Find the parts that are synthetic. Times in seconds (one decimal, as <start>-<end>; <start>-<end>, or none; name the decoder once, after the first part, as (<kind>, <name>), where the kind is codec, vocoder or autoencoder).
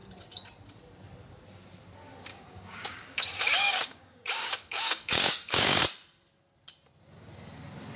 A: 2.3-5.8 (codec, DAC)